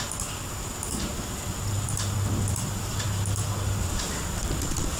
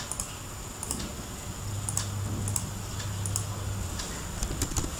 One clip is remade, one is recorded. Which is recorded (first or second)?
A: second